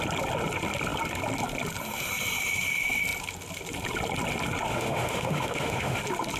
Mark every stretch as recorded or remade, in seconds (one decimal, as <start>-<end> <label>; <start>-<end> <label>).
0.0-4.7 recorded; 4.7-6.0 remade; 6.0-6.4 recorded